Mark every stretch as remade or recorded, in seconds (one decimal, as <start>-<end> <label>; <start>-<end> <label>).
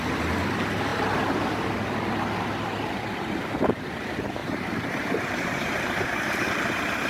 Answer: 0.0-4.4 recorded; 4.4-6.4 remade; 6.4-7.1 recorded